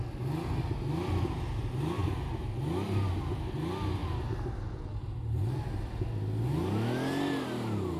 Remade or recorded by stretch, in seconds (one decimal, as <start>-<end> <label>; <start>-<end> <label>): 0.0-8.0 recorded